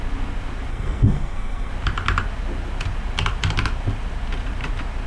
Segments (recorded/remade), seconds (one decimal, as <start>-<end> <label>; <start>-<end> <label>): 0.0-0.7 recorded; 0.7-1.7 remade; 1.7-5.1 recorded